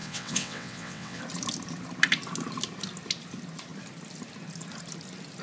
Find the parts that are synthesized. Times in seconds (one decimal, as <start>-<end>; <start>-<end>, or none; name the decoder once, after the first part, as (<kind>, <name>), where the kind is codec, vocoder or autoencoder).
0.0-1.2 (vocoder, WaveNeXt)